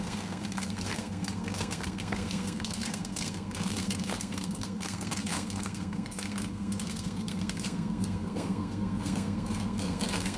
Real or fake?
fake